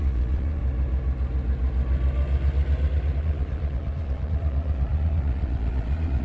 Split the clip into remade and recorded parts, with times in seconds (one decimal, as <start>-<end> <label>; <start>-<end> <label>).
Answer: 0.0-0.6 remade; 0.6-3.2 recorded; 3.2-6.2 remade